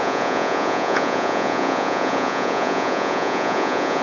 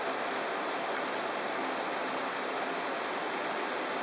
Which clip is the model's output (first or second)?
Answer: first